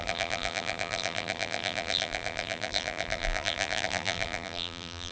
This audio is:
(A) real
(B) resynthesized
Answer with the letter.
B